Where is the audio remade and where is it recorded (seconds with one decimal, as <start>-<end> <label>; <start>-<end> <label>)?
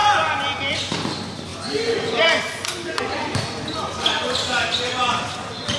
0.0-5.8 recorded